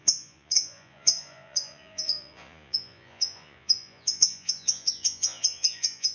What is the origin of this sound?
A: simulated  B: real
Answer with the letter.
A